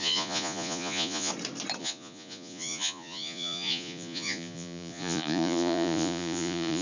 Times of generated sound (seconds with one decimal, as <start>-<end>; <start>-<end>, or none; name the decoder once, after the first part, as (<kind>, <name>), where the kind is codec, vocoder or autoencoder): 0.0-1.3 (vocoder, Vocos); 1.8-6.8

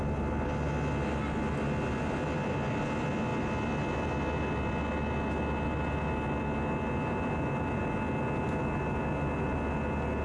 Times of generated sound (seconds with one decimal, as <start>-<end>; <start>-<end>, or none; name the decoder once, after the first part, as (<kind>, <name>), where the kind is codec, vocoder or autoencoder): none

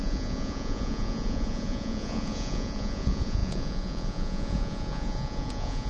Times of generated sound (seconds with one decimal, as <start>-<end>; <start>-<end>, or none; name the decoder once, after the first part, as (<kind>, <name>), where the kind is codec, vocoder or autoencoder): 0.0-5.9 (vocoder, Vocos)

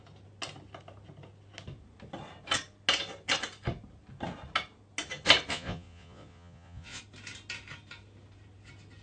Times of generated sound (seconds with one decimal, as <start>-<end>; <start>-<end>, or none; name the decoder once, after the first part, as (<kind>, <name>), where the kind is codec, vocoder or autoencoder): 5.5-7.0 (vocoder, Vocos)

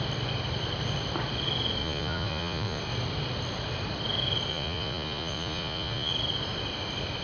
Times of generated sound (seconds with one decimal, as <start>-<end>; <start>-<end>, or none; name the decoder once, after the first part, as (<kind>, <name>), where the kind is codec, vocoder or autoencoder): 1.8-2.8 (vocoder, Vocos); 4.5-6.1